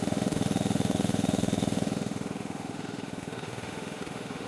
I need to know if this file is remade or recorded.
remade